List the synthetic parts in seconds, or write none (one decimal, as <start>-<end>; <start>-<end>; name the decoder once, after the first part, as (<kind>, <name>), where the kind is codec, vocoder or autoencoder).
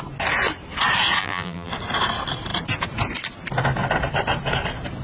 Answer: 1.2-1.7 (vocoder, BigVGAN v2)